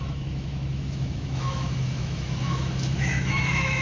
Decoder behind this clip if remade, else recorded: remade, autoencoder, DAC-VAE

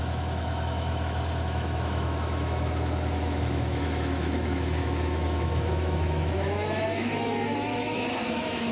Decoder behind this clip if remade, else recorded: remade, autoencoder, DAC-VAE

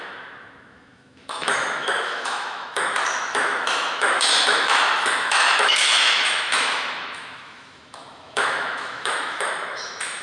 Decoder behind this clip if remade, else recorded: remade, autoencoder, DAC-VAE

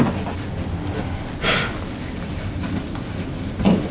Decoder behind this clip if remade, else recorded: recorded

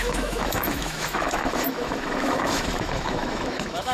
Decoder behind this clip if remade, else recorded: remade, autoencoder, DAC-VAE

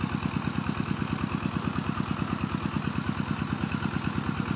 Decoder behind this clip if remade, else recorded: recorded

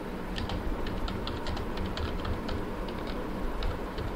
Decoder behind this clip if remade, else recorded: recorded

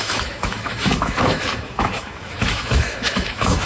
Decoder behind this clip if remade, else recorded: remade, autoencoder, DAC-VAE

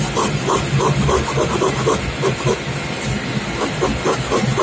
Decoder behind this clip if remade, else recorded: recorded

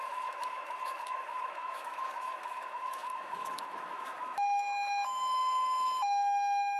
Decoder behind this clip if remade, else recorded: remade, autoencoder, DAC-VAE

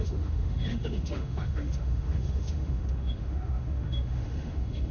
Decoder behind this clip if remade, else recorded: remade, autoencoder, DAC-VAE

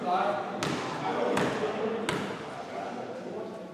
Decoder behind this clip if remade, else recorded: recorded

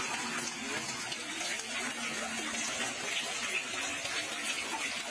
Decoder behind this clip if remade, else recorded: recorded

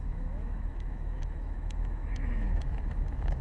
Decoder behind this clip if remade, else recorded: remade, autoencoder, DAC-VAE